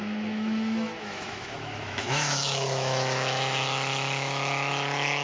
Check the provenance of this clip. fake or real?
fake